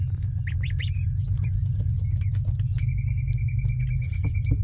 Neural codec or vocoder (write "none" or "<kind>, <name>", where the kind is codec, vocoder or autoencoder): none